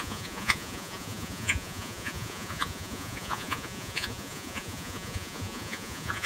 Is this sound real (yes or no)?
no